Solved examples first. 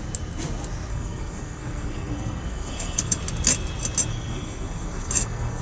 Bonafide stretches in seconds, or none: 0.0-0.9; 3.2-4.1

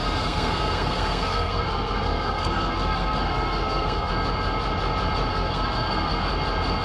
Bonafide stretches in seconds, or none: 4.1-5.3; 6.3-6.8